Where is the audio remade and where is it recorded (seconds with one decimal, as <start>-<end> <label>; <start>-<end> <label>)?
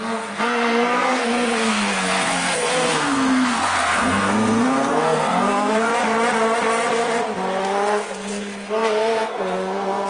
0.0-5.9 remade; 5.9-7.6 recorded; 7.6-10.1 remade